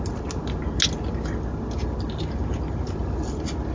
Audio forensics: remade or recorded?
recorded